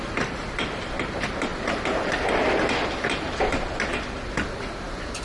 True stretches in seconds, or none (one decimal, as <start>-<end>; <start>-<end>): 0.0-5.2